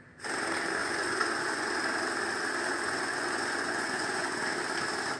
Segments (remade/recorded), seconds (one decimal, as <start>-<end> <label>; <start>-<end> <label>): 0.0-0.8 recorded; 0.8-1.7 remade; 1.7-2.7 recorded; 2.7-4.4 remade; 4.4-5.2 recorded